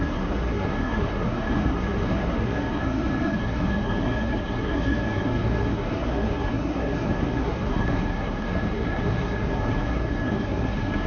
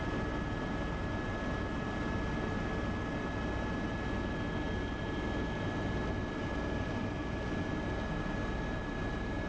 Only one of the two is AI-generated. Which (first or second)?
first